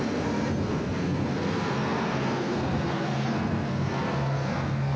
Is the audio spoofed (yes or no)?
yes